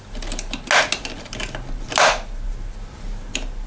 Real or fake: real